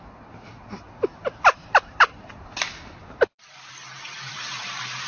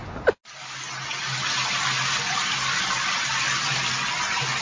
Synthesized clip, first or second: first